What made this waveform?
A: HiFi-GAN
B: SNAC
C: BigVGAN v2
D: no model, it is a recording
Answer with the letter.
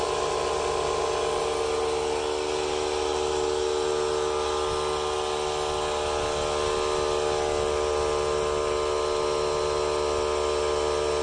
D